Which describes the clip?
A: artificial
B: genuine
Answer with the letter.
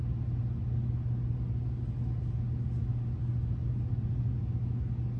B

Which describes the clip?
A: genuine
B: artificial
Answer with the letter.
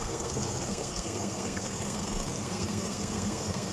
B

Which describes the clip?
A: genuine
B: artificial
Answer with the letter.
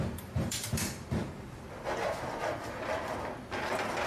B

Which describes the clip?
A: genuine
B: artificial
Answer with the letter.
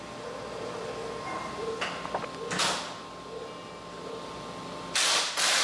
A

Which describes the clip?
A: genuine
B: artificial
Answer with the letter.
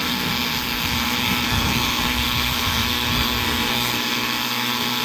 B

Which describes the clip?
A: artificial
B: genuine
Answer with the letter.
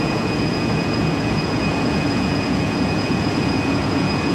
A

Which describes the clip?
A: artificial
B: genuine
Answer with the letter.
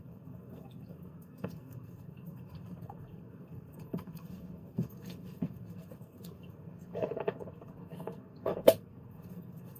A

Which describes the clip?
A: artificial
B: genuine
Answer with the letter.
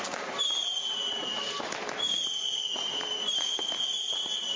A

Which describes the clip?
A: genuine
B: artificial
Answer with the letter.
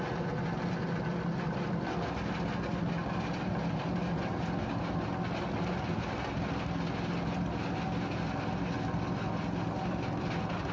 A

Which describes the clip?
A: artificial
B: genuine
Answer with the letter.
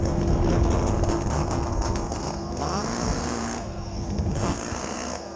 A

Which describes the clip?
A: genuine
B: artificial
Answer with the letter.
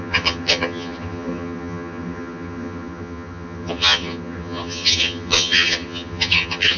B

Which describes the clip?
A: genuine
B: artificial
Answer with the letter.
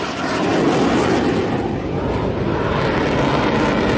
A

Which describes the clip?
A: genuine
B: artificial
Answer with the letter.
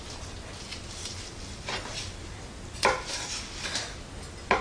A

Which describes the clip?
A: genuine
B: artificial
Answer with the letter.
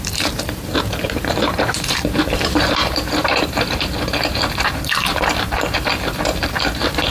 B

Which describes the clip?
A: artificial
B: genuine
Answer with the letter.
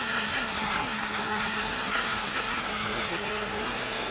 A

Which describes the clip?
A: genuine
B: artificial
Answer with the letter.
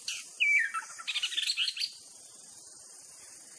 A